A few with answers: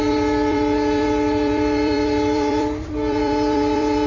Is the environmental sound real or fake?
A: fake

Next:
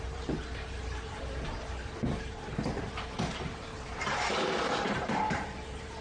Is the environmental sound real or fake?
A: fake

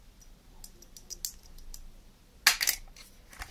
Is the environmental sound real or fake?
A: real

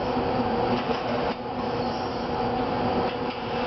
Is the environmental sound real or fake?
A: fake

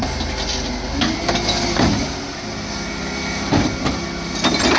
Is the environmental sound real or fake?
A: real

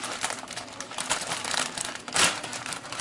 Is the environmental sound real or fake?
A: fake